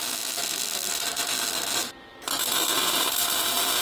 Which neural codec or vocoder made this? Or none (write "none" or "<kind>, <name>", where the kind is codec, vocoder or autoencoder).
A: none